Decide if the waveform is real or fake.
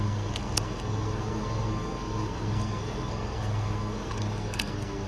fake